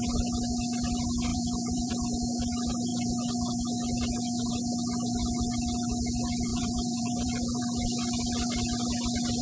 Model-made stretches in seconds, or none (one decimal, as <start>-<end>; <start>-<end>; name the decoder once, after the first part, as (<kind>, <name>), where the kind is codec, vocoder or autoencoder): 1.3-1.9 (vocoder, BigVGAN v2); 6.5-7.6